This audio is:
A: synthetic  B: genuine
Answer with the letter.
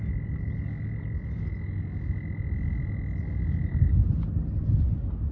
B